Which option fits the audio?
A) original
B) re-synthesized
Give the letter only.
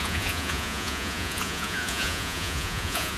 B